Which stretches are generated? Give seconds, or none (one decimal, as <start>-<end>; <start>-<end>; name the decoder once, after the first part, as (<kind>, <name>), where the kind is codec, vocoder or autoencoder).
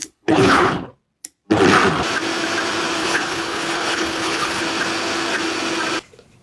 0.0-0.7 (codec, HILCodec); 3.0-4.6